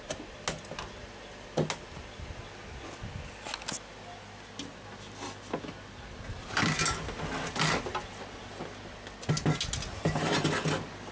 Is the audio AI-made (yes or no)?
no